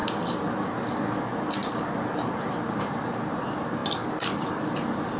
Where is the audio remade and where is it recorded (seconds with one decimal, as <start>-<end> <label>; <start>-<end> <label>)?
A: 0.0-5.2 recorded